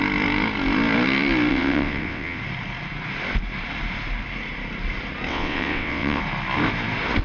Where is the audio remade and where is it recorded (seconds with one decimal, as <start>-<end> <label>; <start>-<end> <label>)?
0.0-1.5 recorded; 1.5-2.4 remade; 2.4-5.3 recorded; 5.3-6.2 remade; 6.2-7.2 recorded